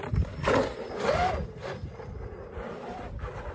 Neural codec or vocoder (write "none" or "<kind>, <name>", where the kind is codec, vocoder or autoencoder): none